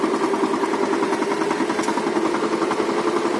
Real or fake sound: real